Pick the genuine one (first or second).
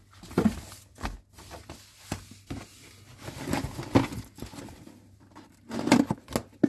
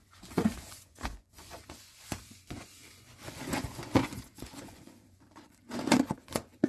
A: first